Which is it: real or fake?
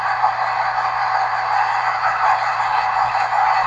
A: real